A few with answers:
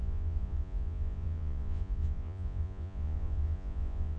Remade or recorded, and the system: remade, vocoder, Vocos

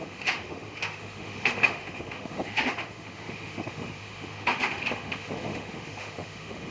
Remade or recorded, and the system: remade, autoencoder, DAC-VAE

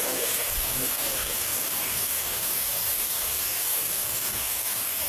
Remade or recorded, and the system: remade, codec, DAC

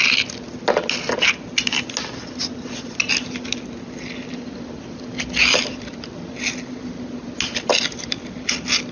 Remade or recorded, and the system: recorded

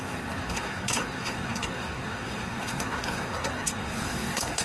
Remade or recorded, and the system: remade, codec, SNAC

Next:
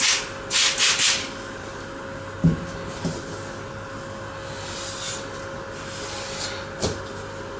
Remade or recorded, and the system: recorded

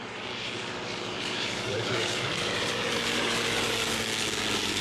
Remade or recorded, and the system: remade, codec, DAC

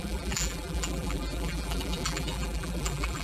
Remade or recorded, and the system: remade, vocoder, BigVGAN v2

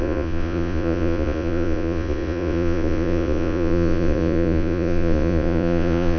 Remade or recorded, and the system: remade, vocoder, Vocos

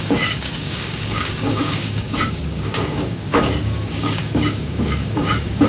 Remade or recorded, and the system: remade, codec, DAC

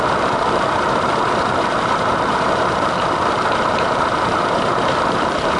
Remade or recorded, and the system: remade, vocoder, BigVGAN v2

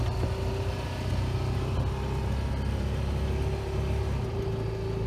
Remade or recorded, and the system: recorded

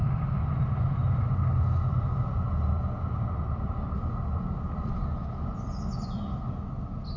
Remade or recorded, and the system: recorded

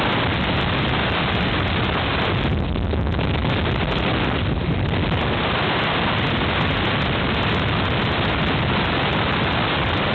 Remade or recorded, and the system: recorded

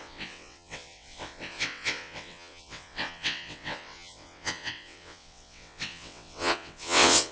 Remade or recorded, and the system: remade, vocoder, WaveNeXt